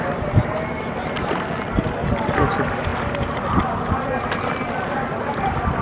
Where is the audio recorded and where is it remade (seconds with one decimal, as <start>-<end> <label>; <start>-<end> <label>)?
0.0-5.8 recorded